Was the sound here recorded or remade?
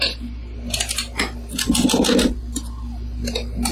recorded